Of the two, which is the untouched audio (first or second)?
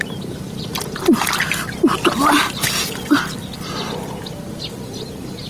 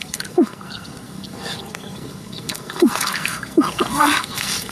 first